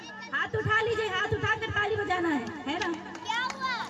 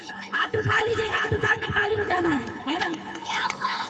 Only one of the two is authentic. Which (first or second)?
first